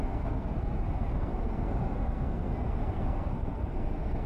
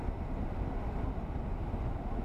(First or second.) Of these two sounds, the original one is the second